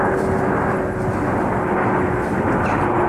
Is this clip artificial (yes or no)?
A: no